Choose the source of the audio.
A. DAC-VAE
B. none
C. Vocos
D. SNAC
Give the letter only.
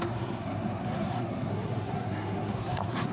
D